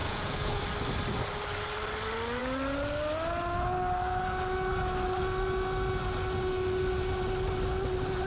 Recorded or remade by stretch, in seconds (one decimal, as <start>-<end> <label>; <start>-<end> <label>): 0.0-0.6 remade; 0.6-8.3 recorded